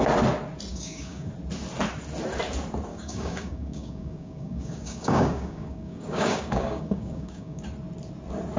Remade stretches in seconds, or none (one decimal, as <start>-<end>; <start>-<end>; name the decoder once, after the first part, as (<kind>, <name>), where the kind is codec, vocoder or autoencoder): 0.7-1.3 (codec, DAC); 2.9-7.6